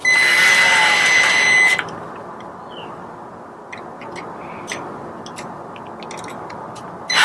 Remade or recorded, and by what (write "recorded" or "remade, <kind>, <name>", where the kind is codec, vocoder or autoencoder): recorded